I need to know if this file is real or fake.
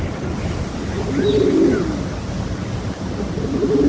real